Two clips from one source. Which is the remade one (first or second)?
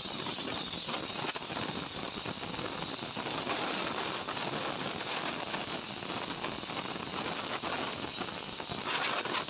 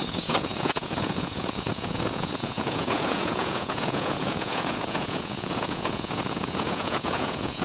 second